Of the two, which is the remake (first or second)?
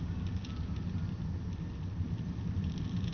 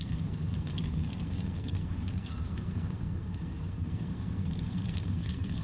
second